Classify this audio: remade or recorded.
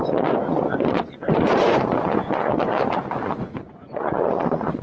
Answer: remade